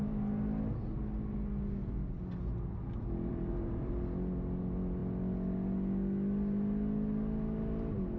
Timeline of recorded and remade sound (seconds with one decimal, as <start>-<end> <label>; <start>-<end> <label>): 0.0-3.3 recorded; 3.3-3.9 remade; 3.9-8.2 recorded